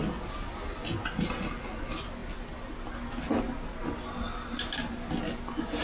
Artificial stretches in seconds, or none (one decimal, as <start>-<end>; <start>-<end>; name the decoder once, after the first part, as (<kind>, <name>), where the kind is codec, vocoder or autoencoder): none